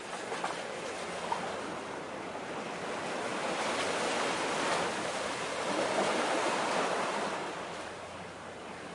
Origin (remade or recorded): recorded